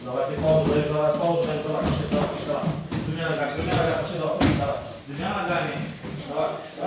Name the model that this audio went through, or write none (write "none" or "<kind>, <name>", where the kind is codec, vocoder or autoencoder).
none